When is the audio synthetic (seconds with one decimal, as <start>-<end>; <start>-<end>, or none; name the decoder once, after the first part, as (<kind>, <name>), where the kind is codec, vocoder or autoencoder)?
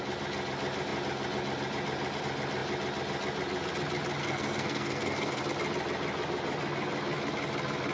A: 4.2-5.4 (codec, SNAC)